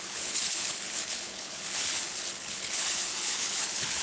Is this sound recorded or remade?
remade